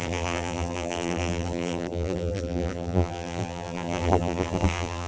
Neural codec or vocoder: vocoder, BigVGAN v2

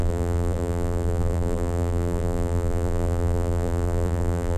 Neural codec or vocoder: vocoder, BigVGAN v2